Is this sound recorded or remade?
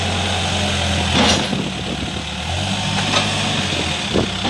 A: recorded